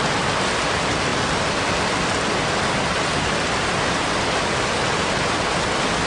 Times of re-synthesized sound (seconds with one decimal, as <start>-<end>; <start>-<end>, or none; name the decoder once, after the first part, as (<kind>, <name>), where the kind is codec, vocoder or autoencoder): none